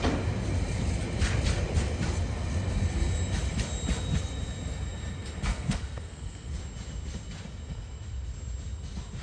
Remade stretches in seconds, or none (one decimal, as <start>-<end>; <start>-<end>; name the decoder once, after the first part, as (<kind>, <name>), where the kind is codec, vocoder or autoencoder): 5.5-6.6 (codec, SNAC)